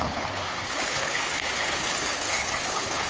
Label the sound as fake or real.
fake